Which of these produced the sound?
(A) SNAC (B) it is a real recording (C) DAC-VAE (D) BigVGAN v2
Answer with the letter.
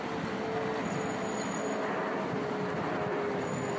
B